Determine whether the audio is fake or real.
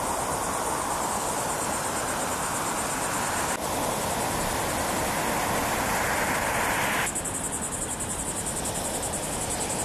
real